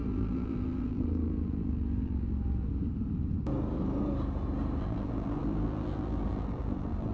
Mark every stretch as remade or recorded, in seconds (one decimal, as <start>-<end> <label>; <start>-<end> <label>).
0.0-2.7 remade; 2.7-4.8 recorded; 4.8-7.1 remade